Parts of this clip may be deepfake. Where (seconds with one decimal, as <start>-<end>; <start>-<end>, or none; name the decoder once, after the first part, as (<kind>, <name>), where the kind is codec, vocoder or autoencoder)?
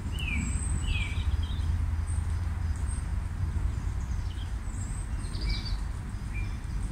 0.9-1.6 (vocoder, BigVGAN v2)